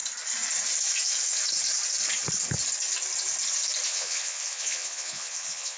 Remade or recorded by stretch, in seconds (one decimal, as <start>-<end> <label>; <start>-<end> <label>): 0.0-3.9 recorded; 3.9-5.8 remade